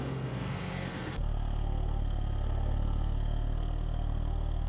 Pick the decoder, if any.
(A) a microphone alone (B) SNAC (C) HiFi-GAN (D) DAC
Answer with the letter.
B